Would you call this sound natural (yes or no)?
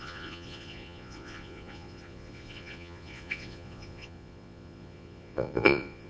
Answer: no